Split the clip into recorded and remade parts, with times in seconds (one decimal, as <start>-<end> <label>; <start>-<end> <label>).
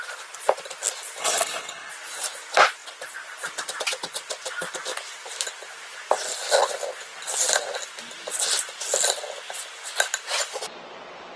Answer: 0.0-1.2 recorded; 1.2-1.9 remade; 1.9-11.4 recorded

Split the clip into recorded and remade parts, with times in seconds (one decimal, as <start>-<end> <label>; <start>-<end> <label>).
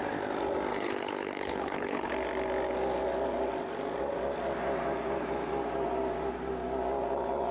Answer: 0.0-0.7 recorded; 0.7-2.1 remade; 2.1-7.5 recorded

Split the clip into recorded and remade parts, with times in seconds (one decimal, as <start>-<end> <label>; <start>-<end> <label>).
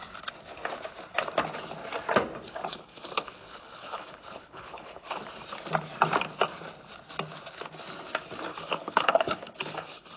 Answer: 0.0-2.7 recorded; 2.7-5.2 remade; 5.2-8.5 recorded; 8.5-10.2 remade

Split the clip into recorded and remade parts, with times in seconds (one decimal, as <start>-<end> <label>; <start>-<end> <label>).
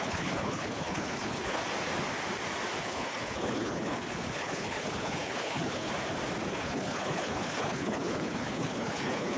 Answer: 0.0-1.6 remade; 1.6-2.8 recorded; 2.8-5.9 remade; 5.9-6.5 recorded; 6.5-9.4 remade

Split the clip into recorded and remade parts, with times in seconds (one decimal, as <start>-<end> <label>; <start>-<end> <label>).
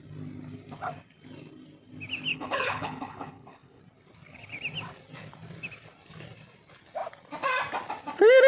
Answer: 0.0-2.3 recorded; 2.3-3.8 remade; 3.8-8.5 recorded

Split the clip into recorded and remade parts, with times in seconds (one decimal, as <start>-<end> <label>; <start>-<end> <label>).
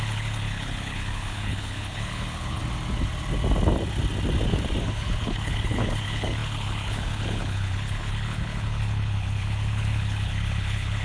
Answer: 0.0-2.6 remade; 2.6-4.8 recorded; 4.8-11.0 remade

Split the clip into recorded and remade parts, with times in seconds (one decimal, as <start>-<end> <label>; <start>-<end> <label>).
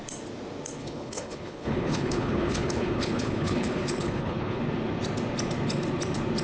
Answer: 0.0-0.8 recorded; 0.8-4.6 remade; 4.6-6.4 recorded